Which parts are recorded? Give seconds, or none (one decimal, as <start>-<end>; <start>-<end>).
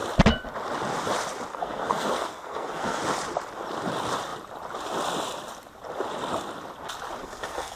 0.0-1.5; 3.0-7.2